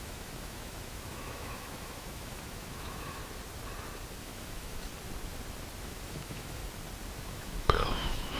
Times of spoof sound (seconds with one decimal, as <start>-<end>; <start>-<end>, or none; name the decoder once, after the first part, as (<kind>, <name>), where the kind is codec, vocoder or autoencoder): 0.0-3.2 (autoencoder, DAC-VAE); 4.2-4.9; 5.8-6.6; 7.2-8.4